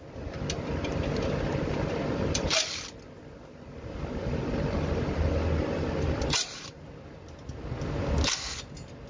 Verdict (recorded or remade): recorded